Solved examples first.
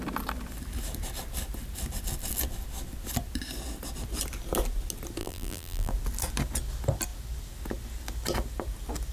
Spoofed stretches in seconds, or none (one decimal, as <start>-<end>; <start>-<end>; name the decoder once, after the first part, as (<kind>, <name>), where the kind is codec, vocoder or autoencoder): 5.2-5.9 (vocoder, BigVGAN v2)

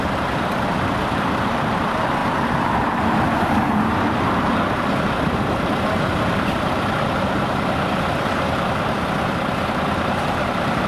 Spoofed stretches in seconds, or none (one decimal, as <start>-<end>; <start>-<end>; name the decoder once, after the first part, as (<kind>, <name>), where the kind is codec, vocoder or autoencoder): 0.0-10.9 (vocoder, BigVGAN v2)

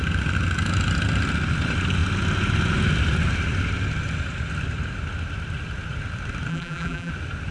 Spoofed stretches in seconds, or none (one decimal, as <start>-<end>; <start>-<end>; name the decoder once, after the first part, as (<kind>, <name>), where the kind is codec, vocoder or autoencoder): 6.5-7.1 (vocoder, BigVGAN v2)